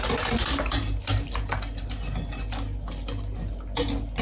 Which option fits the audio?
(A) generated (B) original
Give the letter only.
B